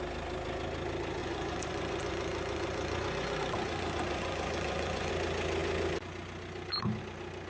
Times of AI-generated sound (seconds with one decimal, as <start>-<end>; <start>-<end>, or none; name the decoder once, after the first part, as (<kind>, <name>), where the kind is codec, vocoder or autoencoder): 1.2-5.1 (vocoder, Vocos)